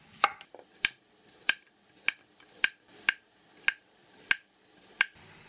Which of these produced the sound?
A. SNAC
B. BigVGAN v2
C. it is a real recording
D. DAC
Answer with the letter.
C